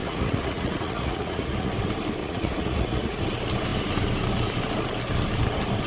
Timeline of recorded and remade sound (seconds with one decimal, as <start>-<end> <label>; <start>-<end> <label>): 0.0-1.7 remade; 1.7-2.2 recorded; 2.2-3.2 remade; 3.2-5.9 recorded